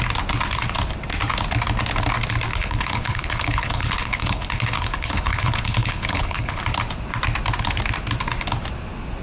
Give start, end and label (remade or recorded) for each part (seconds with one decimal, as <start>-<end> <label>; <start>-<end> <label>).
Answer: 0.0-2.5 recorded; 2.5-6.6 remade; 6.6-9.2 recorded